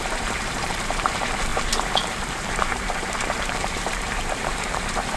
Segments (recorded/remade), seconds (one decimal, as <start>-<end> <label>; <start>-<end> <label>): 0.0-5.2 remade